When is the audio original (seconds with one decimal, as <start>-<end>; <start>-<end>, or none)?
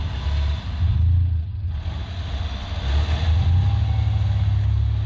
0.0-5.1